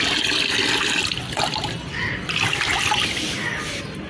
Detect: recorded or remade remade